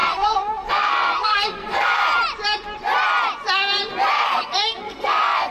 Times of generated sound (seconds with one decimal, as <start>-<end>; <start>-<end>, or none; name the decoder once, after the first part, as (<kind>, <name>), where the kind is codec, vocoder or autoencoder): 0.0-2.0 (codec, SNAC); 4.1-5.5